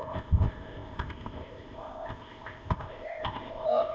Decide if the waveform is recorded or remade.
remade